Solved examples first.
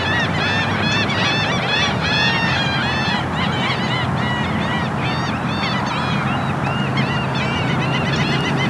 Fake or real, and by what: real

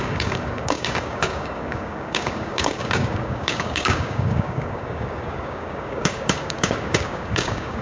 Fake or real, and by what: fake, codec, DAC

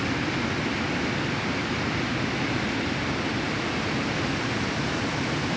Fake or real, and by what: real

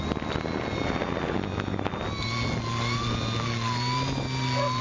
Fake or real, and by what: real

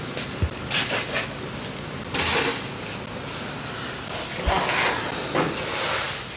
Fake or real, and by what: real